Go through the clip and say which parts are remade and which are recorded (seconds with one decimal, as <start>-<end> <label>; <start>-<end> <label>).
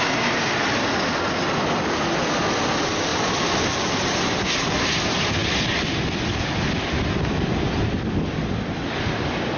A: 0.0-9.6 recorded